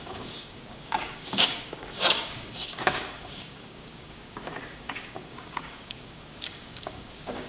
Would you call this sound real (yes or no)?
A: no